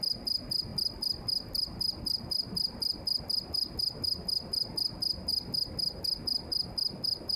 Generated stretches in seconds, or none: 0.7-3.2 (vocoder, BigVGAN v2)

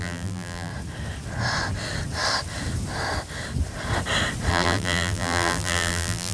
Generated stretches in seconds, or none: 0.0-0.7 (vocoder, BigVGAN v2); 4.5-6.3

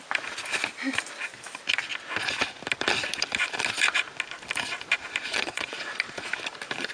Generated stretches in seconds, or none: 5.3-6.3 (vocoder, Vocos)